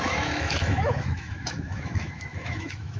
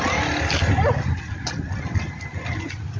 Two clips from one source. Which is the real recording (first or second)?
second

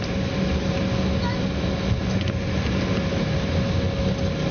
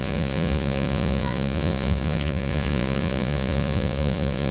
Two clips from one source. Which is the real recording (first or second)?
first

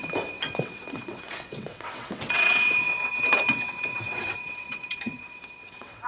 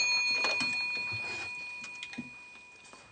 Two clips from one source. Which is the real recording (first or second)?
second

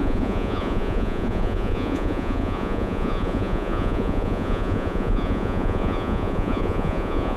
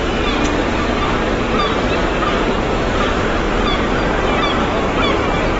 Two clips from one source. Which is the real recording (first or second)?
second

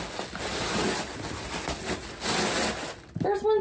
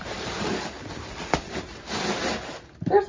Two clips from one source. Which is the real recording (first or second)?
first